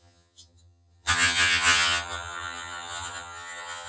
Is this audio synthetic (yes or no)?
yes